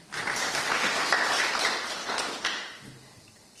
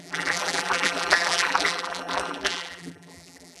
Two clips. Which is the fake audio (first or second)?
second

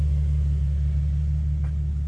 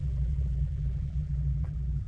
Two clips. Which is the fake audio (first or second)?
second